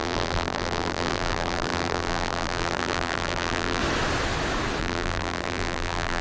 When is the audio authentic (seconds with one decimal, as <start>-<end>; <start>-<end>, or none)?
3.8-4.8